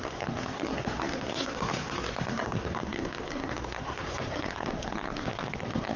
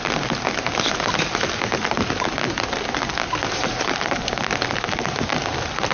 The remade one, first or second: first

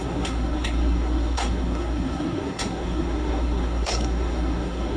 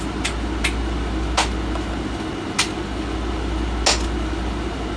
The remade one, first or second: first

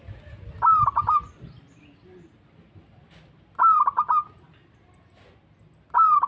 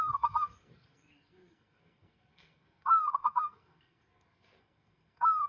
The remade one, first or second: second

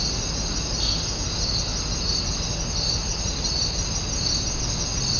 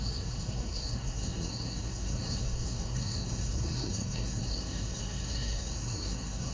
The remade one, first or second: second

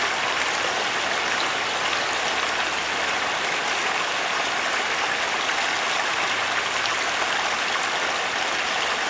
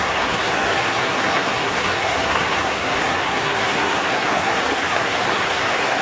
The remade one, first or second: second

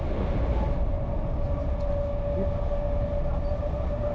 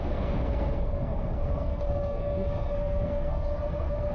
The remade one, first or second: second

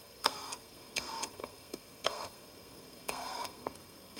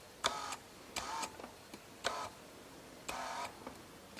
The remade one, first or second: first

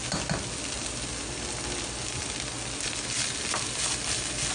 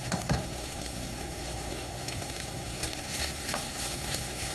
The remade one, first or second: second